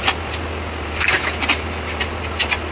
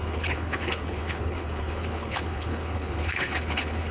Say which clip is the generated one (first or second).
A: second